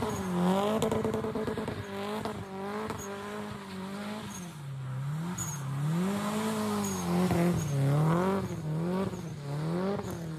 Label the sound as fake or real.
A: real